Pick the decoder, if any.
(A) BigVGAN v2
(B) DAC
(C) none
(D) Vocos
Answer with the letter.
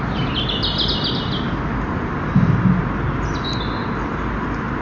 C